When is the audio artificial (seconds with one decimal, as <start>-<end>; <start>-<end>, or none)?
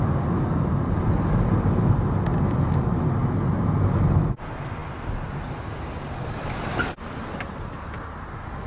2.3-2.8